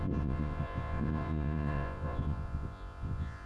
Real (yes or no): no